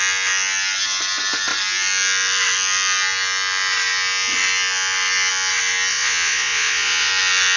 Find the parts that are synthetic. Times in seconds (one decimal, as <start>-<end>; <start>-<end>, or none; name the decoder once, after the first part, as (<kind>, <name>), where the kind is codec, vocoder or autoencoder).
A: 5.9-7.1 (vocoder, Vocos)